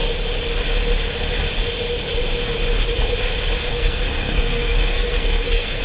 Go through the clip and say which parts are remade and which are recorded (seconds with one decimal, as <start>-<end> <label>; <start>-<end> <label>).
0.0-3.7 recorded; 3.7-5.8 remade